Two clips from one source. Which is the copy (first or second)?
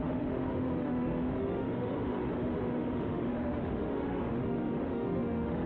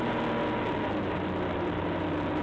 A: first